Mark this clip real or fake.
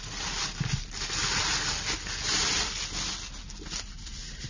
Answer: real